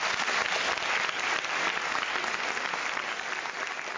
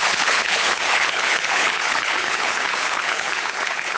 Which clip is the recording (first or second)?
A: first